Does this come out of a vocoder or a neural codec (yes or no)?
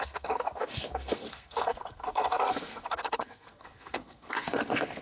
yes